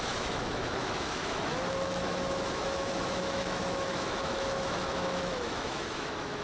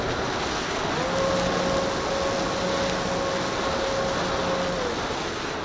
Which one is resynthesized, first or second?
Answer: first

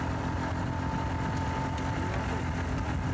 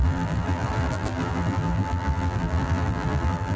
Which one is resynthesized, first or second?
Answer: second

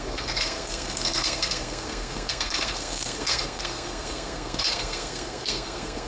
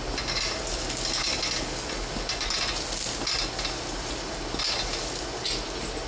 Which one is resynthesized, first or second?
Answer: first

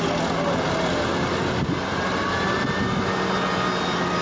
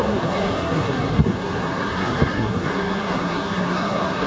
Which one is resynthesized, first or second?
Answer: second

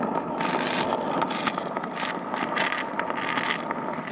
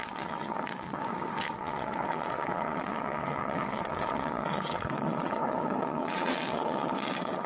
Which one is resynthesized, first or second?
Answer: second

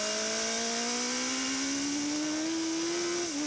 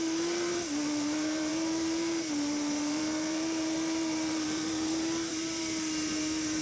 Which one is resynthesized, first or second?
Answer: second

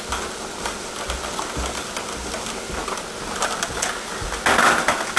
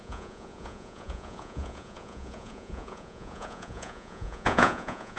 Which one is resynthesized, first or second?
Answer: second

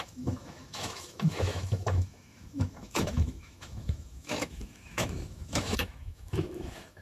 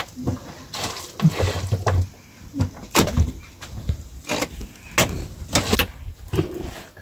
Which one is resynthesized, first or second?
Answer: first